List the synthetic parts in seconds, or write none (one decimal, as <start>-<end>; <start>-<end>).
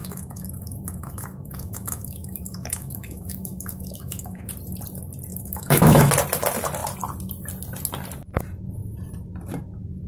0.0-4.5; 5.3-6.1